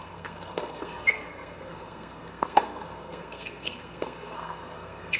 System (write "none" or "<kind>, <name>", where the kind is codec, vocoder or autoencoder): codec, SNAC